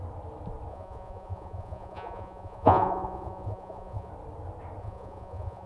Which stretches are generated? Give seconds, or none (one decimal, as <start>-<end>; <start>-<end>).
0.7-4.1; 4.8-5.7